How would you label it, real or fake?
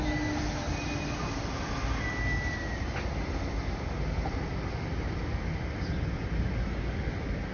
real